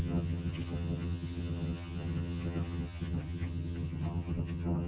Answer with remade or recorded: remade